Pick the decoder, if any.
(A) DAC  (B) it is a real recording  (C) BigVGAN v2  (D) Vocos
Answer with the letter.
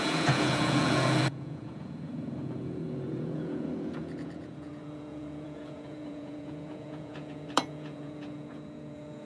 D